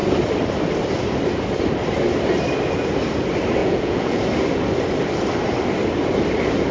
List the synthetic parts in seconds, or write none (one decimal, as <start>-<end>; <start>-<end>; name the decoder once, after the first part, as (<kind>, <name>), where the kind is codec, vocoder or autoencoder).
3.6-4.2 (vocoder, Vocos)